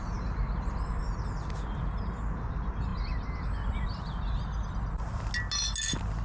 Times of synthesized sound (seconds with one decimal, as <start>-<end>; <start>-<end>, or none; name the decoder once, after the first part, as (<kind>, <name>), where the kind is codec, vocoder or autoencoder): none

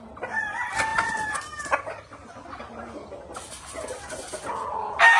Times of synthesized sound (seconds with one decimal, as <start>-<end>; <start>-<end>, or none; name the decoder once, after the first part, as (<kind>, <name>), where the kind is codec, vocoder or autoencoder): none

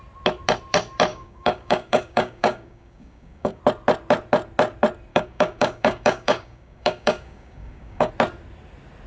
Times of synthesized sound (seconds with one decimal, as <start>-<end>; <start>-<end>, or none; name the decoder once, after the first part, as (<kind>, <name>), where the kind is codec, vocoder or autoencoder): 1.1-3.6 (codec, DAC); 5.1-8.1

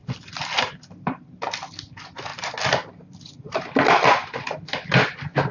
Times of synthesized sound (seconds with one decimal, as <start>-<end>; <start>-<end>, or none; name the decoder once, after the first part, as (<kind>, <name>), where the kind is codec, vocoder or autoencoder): none

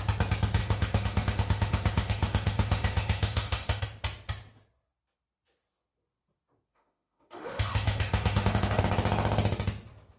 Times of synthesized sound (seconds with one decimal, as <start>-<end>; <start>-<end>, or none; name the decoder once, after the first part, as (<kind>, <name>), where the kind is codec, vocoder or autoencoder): 0.6-3.8 (autoencoder, DAC-VAE); 6.7-8.8